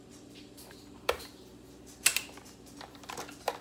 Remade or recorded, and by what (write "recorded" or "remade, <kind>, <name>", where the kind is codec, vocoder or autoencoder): remade, vocoder, BigVGAN v2